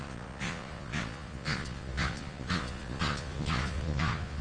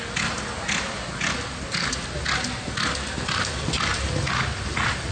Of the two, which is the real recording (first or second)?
second